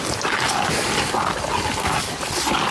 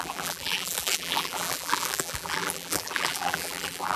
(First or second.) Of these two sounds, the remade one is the second